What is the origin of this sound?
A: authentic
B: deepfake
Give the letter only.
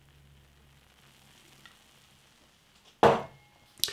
A